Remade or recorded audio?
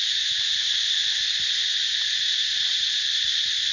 recorded